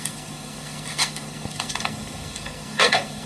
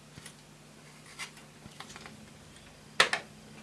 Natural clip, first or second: second